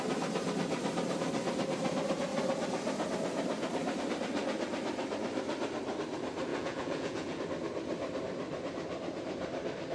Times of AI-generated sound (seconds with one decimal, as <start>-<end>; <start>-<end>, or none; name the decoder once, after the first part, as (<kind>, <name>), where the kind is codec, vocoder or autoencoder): 6.5-7.4 (vocoder, Vocos)